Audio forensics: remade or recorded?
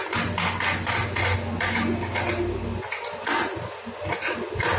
recorded